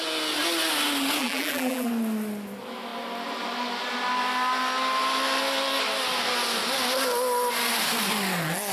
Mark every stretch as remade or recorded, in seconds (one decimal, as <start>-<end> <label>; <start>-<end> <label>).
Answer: 0.0-1.2 recorded; 1.2-1.9 remade; 1.9-8.7 recorded